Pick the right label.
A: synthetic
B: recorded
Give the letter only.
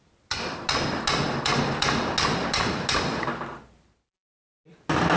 B